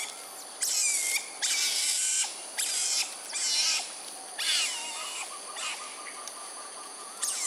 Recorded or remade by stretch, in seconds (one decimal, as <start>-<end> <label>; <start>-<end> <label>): 0.0-6.4 recorded; 6.4-7.5 remade